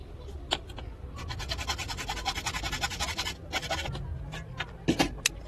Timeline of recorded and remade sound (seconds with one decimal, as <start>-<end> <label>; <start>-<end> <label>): 0.0-5.5 recorded